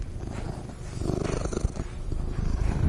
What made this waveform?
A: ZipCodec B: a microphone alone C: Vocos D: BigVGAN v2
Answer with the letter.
D